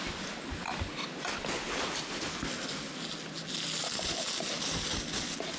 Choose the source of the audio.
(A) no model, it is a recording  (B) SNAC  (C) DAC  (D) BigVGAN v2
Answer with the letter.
A